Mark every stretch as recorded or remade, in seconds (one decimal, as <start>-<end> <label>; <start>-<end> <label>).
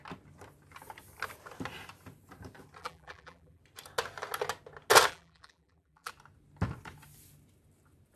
0.0-2.8 recorded; 2.8-3.6 remade; 3.6-5.1 recorded; 5.1-6.1 remade; 6.1-8.2 recorded